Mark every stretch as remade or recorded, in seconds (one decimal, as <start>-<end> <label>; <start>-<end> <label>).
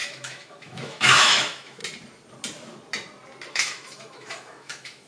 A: 0.0-1.8 remade; 1.8-3.5 recorded; 3.5-5.1 remade